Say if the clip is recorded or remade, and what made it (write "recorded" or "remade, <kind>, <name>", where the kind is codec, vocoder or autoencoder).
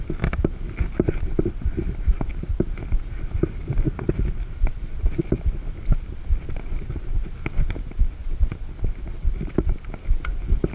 recorded